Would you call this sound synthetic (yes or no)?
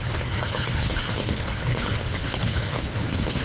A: yes